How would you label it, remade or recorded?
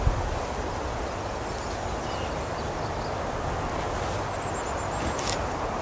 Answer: recorded